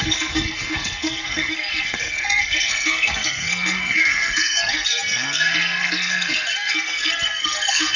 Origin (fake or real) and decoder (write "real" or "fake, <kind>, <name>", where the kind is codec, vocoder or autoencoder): fake, codec, SNAC